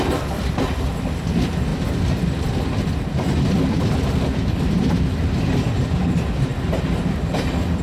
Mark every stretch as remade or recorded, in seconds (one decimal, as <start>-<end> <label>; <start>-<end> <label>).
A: 0.0-7.8 recorded